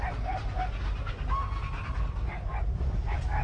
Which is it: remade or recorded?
recorded